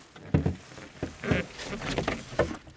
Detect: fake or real real